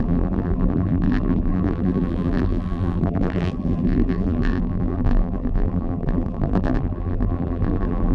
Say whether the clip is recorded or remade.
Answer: remade